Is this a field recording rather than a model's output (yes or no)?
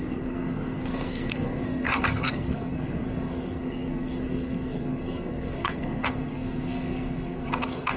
no